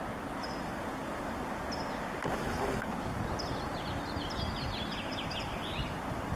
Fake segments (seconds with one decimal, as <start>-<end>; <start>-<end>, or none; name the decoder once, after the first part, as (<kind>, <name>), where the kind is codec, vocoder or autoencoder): none

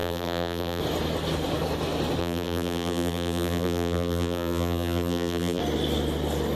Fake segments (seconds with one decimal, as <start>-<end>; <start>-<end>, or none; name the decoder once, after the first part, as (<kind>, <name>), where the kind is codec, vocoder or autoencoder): 0.0-0.8 (vocoder, BigVGAN v2); 2.2-5.6